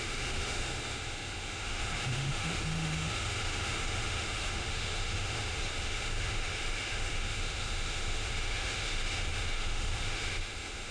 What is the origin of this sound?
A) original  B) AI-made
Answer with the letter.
B